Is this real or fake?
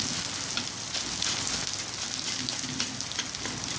real